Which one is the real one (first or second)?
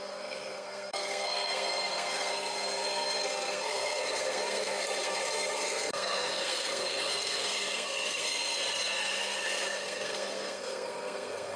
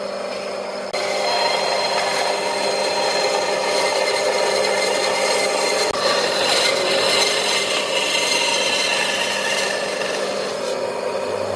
second